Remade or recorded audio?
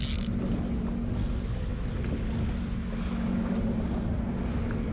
recorded